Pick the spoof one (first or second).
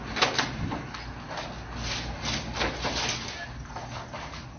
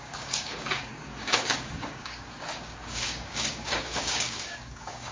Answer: second